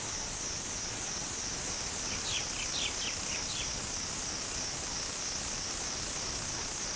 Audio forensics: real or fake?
real